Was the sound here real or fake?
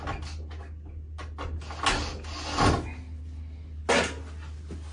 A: real